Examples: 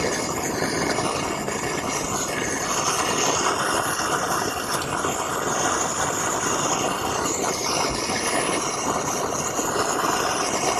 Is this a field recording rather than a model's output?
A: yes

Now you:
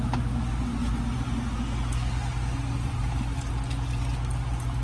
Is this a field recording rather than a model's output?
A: yes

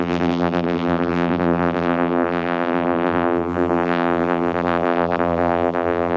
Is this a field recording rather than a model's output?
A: no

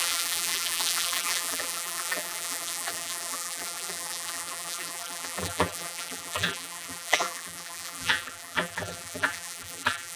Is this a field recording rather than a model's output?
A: no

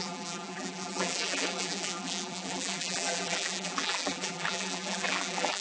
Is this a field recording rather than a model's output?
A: no